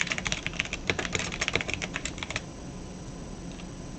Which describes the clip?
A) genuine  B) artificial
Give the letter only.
A